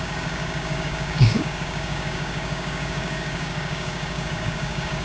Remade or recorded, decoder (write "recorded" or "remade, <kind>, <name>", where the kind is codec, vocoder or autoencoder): remade, codec, DAC